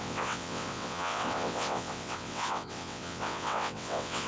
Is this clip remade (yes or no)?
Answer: yes